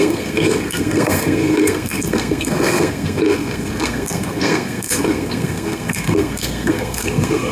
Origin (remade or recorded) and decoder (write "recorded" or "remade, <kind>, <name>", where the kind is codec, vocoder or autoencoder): remade, codec, SNAC